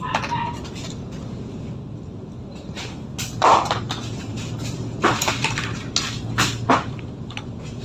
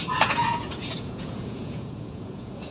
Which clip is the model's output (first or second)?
second